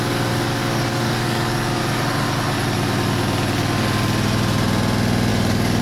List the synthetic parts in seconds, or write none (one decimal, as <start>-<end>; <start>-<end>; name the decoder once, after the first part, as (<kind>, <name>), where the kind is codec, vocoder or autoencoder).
0.0-1.8 (codec, DAC); 5.3-5.8